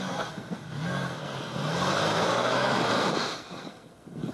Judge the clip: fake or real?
fake